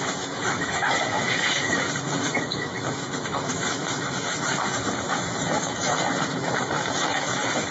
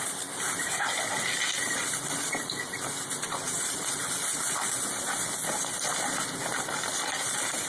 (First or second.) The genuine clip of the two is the second